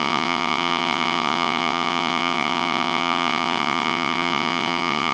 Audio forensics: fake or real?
fake